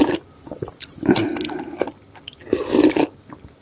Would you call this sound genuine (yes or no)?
yes